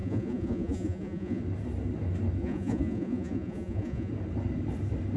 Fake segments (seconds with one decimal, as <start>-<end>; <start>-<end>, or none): 0.0-1.4; 2.4-4.1

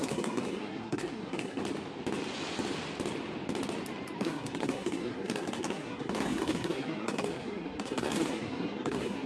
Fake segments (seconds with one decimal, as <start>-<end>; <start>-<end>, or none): 0.0-1.6; 4.2-9.3

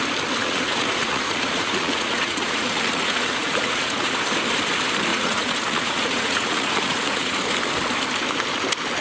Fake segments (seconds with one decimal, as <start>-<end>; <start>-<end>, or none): 0.4-4.2; 5.1-7.4

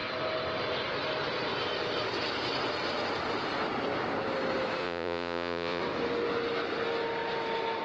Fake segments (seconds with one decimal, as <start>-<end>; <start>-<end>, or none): 4.8-5.8